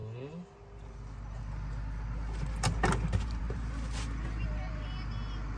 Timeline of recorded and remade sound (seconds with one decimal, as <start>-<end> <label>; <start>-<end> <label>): 0.0-5.6 recorded